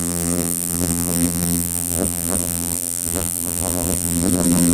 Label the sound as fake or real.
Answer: fake